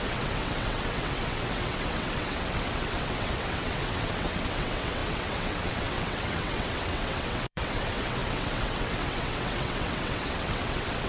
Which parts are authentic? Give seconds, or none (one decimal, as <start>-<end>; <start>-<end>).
none